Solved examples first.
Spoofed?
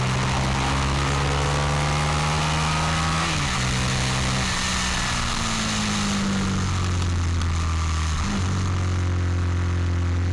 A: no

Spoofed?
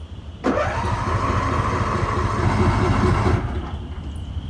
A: no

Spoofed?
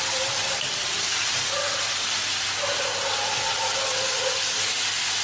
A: no